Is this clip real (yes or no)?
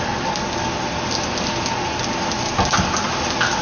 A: yes